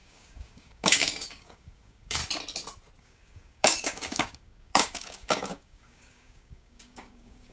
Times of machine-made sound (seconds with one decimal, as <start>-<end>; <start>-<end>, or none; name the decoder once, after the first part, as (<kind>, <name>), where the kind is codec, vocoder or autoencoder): 0.0-2.2 (codec, DAC); 3.0-7.5